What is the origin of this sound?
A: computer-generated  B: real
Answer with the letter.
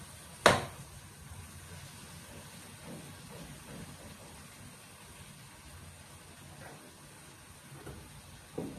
B